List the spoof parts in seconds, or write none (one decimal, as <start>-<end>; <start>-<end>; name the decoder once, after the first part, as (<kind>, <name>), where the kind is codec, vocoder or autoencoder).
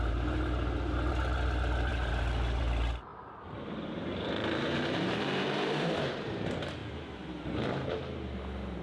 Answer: 1.9-2.6 (vocoder, BigVGAN v2); 3.1-5.9; 6.8-7.3